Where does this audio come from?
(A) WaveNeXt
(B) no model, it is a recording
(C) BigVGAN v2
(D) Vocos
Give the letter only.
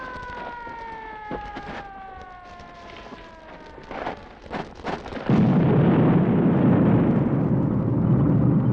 B